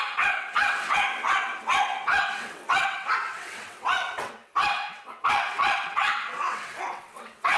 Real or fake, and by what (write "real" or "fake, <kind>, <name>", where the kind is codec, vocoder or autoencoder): fake, vocoder, WaveNeXt